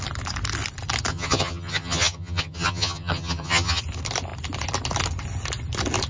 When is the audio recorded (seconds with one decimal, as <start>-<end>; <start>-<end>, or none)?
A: 0.0-1.1; 3.8-6.1